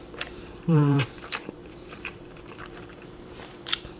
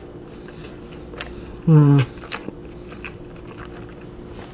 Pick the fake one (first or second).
first